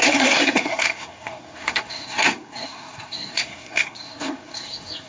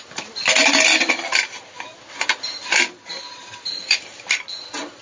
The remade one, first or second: first